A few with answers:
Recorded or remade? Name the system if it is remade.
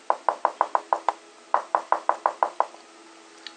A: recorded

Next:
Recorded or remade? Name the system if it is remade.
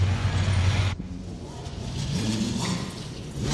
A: remade, vocoder, Vocos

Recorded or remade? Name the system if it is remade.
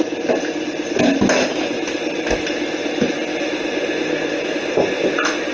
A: recorded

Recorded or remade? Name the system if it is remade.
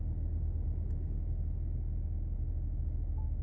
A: recorded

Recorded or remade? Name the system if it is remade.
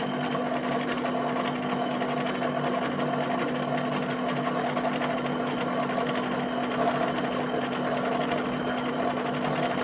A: recorded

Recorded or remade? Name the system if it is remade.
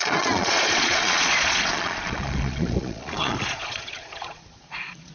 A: remade, vocoder, Vocos